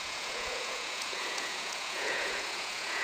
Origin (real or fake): fake